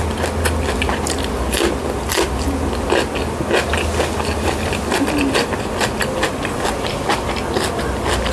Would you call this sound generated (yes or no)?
no